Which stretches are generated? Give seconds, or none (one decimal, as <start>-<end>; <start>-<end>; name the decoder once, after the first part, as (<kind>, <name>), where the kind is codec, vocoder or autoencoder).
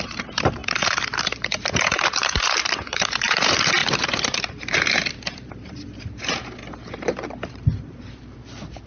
0.0-6.6 (vocoder, BigVGAN v2); 7.5-8.9